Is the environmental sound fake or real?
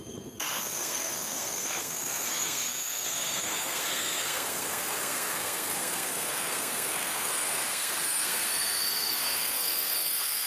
fake